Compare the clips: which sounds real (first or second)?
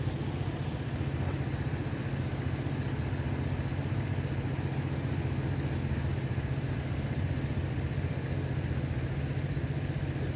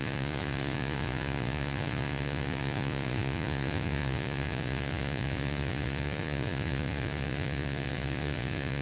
first